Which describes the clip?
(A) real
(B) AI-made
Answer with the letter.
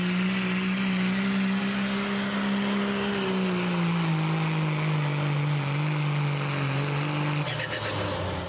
A